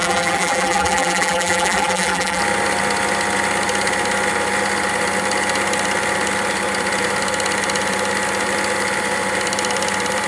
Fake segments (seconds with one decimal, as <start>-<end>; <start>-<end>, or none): 0.0-2.4